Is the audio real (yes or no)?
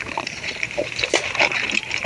no